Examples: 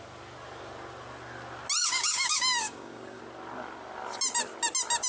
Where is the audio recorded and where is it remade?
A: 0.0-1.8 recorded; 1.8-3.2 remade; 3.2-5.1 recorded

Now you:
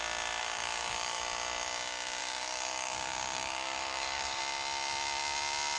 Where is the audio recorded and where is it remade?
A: 0.0-0.4 recorded; 0.4-1.2 remade; 1.2-2.2 recorded; 2.2-4.4 remade; 4.4-5.8 recorded

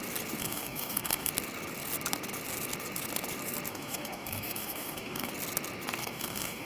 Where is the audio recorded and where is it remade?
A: 0.0-0.4 recorded; 0.4-1.3 remade; 1.3-3.7 recorded; 3.7-5.3 remade; 5.3-6.0 recorded; 6.0-6.7 remade

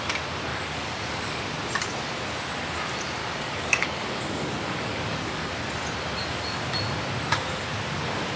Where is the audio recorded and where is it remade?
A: 0.0-0.5 recorded; 0.5-1.4 remade; 1.4-3.2 recorded; 3.2-5.5 remade; 5.5-8.4 recorded

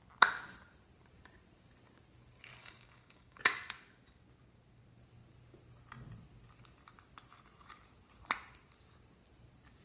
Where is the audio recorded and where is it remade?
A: 0.0-2.6 recorded; 2.6-3.4 remade; 3.4-9.8 recorded

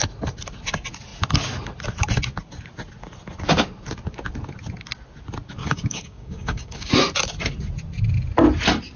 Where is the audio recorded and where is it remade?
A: 0.0-5.6 recorded; 5.6-6.9 remade; 6.9-9.0 recorded